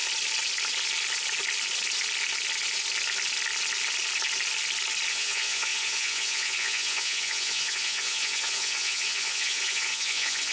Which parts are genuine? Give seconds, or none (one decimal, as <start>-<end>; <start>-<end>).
0.0-5.1